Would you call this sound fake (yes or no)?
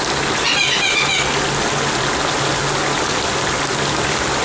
no